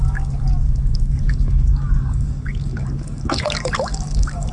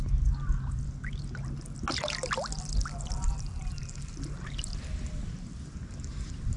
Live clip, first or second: second